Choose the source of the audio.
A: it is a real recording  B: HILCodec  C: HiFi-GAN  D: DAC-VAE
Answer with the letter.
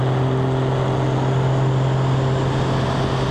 A